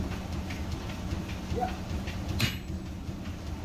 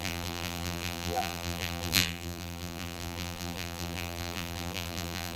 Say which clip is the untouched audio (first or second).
first